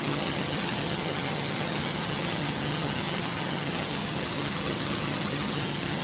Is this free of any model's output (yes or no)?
no